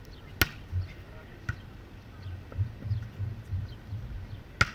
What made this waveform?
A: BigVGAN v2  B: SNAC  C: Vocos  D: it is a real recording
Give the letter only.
D